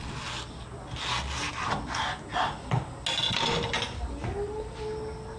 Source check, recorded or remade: recorded